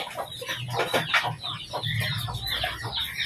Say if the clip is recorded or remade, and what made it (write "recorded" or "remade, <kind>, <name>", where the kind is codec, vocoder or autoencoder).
recorded